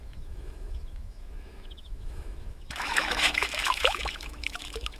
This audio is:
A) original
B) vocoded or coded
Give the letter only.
B